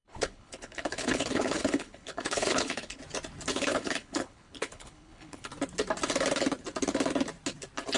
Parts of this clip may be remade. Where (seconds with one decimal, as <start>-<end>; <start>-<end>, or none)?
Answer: 0.0-3.0; 3.5-5.5